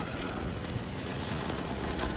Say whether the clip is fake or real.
fake